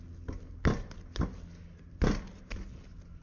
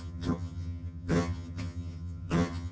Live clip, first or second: first